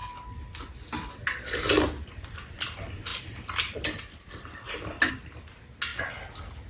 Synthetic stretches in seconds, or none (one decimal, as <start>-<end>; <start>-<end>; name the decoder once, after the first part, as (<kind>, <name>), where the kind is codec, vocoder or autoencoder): 0.0-1.1 (vocoder, BigVGAN v2); 3.1-5.1